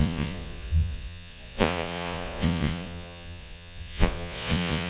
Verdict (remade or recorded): remade